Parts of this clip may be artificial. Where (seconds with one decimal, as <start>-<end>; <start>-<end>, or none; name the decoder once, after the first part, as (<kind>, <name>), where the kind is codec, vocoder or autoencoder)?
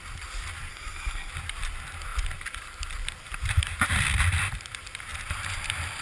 0.7-1.3 (codec, SNAC)